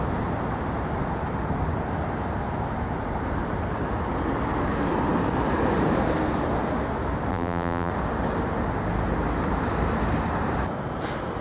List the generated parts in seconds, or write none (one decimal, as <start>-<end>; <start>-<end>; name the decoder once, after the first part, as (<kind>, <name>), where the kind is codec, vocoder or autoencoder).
7.3-7.9 (vocoder, BigVGAN v2)